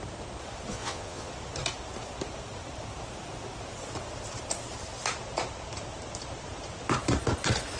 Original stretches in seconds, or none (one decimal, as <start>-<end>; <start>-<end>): 0.0-0.7; 1.3-7.8